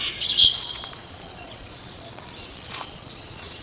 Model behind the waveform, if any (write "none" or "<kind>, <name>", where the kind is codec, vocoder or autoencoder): vocoder, Vocos